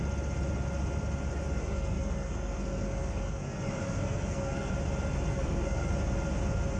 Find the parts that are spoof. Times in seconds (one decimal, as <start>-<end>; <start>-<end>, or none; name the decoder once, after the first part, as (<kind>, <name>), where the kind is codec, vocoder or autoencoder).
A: 1.6-4.7 (codec, SNAC); 5.3-5.9